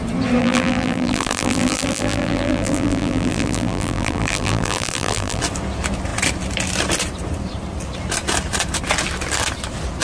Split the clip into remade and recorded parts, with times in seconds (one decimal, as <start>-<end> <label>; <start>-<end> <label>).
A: 0.0-0.4 recorded; 0.4-5.4 remade; 5.4-10.0 recorded

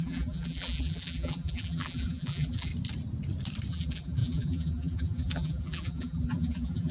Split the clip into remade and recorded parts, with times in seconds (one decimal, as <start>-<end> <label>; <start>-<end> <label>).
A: 0.0-2.7 remade; 2.7-3.7 recorded; 3.7-6.9 remade